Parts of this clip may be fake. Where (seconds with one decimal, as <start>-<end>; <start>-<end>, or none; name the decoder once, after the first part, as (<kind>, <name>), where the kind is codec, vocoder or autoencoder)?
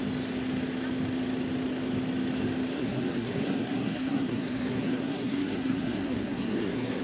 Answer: 2.7-7.0 (codec, SNAC)